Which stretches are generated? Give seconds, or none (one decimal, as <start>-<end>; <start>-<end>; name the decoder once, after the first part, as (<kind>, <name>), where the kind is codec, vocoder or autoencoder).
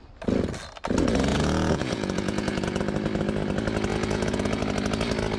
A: 1.3-2.8 (vocoder, Vocos); 3.9-4.6